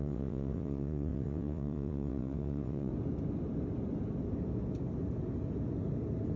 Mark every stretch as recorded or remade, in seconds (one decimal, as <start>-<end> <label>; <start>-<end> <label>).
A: 0.0-2.9 remade; 2.9-6.4 recorded